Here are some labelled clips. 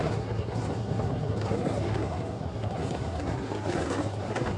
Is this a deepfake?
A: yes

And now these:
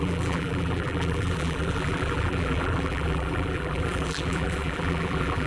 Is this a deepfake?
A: yes